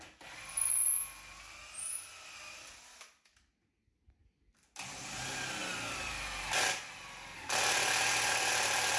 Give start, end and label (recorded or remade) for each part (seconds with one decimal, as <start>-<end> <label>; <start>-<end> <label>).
0.0-9.0 recorded